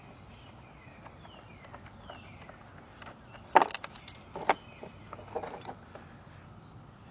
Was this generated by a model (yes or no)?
no